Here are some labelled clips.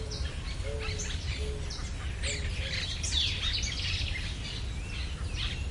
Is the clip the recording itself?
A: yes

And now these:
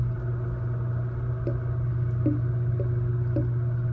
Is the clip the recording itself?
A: yes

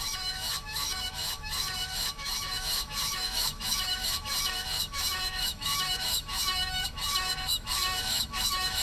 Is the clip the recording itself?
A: no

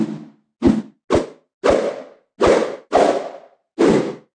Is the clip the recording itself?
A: yes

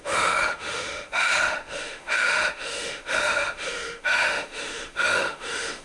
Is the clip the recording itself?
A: no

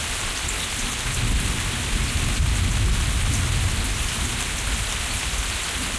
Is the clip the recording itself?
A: yes